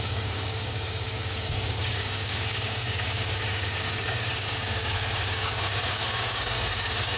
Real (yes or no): no